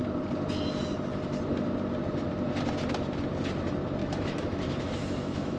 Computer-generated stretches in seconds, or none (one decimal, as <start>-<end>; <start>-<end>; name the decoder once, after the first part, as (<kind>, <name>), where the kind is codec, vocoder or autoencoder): 4.0-5.6 (autoencoder, DAC-VAE)